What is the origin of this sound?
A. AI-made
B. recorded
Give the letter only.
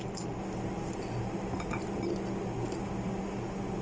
B